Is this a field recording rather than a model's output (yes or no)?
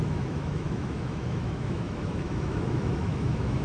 no